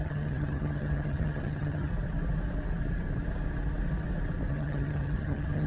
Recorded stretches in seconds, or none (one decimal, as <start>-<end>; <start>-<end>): 1.9-4.5